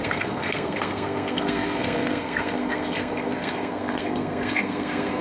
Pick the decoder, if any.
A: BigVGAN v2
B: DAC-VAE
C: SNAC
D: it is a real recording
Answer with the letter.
C